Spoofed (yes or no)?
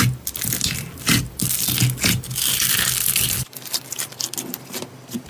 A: no